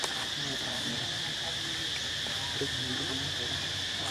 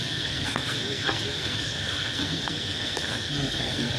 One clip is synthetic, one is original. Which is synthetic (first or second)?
second